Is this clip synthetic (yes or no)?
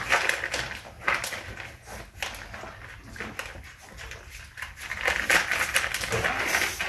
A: no